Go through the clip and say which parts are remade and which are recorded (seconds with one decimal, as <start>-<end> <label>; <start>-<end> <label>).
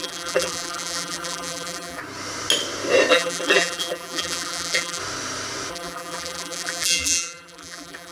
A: 0.0-2.0 remade; 2.0-3.1 recorded; 3.1-5.0 remade; 5.0-5.7 recorded; 5.7-8.1 remade